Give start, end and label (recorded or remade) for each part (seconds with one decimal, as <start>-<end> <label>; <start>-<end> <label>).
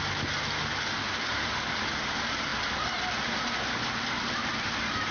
0.0-5.1 recorded